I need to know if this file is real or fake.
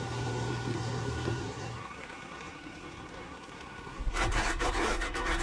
fake